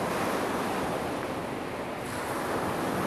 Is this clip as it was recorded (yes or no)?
yes